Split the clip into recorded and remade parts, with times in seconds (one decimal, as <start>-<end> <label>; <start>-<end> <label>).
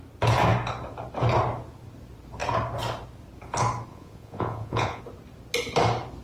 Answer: 0.0-3.9 recorded; 3.9-5.0 remade; 5.0-6.2 recorded